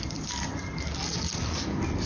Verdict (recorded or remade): recorded